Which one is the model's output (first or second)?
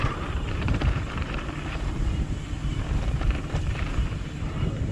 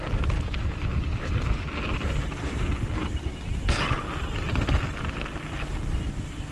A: first